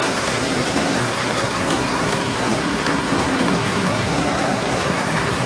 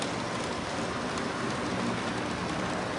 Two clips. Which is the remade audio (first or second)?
first